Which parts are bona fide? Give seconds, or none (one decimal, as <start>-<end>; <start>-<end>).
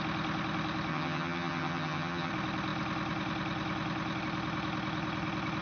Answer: 0.0-0.9; 2.3-5.6